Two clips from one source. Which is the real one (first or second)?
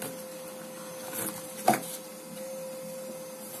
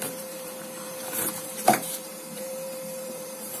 first